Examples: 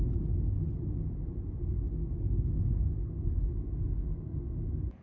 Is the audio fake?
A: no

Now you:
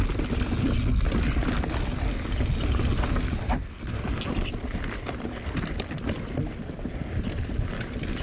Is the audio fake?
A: no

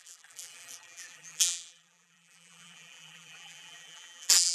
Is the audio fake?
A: yes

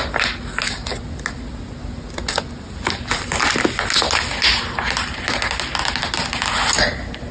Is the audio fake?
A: no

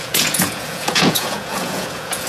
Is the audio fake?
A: yes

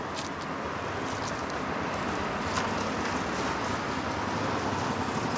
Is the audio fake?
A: no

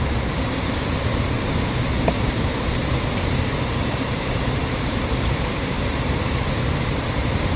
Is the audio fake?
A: yes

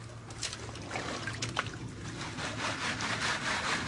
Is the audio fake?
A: yes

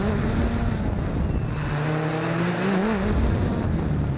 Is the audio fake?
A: no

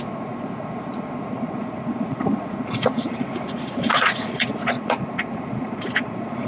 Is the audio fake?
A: yes